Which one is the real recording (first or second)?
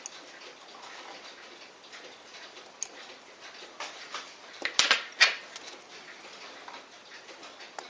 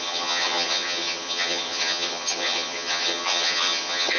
first